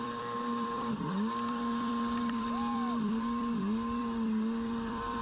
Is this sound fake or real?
fake